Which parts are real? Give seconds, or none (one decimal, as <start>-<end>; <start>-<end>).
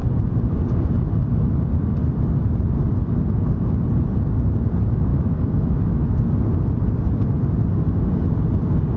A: 0.0-5.1; 6.2-9.0